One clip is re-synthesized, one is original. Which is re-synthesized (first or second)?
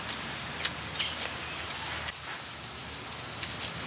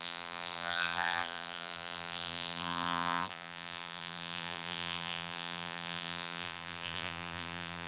second